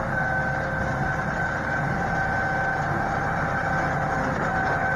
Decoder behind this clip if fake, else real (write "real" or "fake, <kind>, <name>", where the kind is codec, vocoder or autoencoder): real